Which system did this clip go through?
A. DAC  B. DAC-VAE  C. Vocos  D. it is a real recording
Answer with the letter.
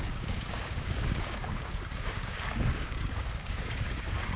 A